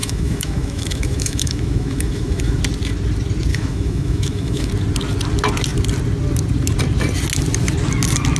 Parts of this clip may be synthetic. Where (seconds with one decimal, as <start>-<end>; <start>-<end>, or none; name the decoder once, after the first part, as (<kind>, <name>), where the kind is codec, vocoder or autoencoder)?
0.0-2.6 (autoencoder, DAC-VAE); 3.5-4.7